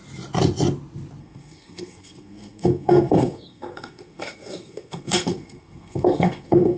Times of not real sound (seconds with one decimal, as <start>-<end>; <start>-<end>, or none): 1.2-6.8